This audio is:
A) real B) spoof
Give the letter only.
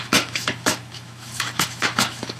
B